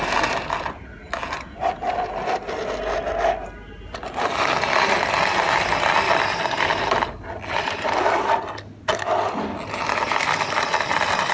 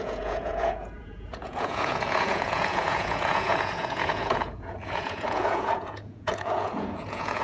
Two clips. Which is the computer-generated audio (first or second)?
second